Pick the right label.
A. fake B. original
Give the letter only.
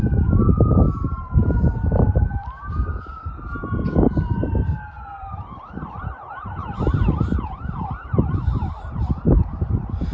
A